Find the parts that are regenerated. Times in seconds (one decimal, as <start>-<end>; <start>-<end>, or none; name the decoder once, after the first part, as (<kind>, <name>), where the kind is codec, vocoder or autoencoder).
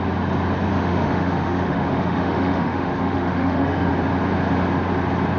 0.7-3.9 (autoencoder, DAC-VAE)